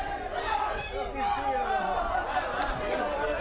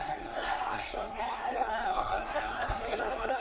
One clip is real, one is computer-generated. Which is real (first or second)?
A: first